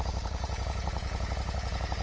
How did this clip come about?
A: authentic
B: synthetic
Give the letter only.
B